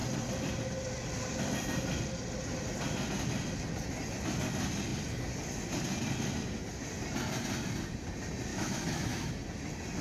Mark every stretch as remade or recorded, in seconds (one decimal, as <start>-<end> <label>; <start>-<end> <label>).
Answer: 0.0-8.5 recorded; 8.5-9.3 remade; 9.3-10.0 recorded